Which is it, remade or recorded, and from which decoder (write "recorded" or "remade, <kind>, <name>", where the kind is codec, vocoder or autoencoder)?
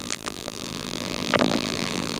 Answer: remade, vocoder, BigVGAN v2